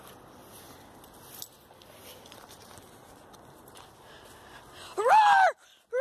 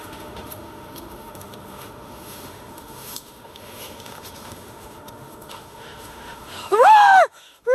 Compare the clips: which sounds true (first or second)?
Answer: first